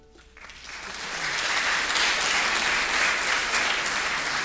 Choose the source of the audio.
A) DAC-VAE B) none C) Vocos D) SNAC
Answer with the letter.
B